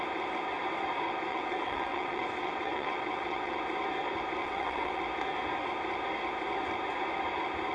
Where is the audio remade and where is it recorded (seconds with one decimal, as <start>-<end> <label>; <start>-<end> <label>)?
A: 0.0-1.3 recorded; 1.3-3.6 remade; 3.6-4.4 recorded; 4.4-5.0 remade; 5.0-7.7 recorded